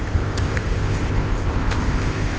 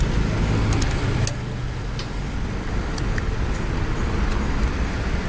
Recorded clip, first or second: second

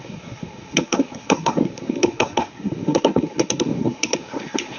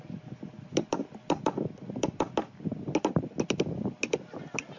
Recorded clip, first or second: second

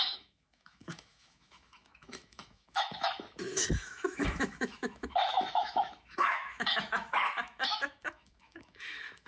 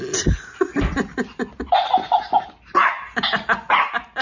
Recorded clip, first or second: second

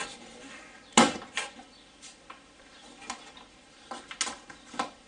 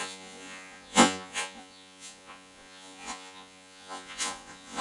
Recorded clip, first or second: first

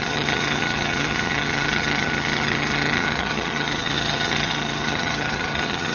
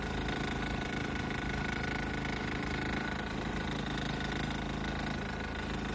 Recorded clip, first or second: second